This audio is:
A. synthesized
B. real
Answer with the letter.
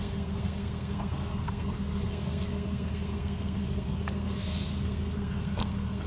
A